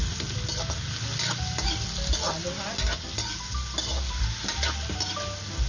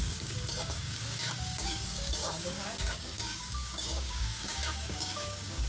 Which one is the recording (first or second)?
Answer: first